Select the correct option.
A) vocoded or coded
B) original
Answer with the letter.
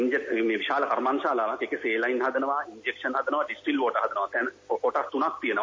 B